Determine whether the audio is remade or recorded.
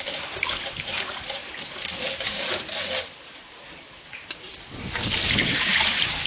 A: remade